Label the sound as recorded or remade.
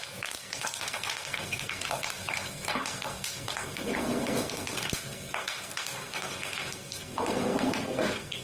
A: remade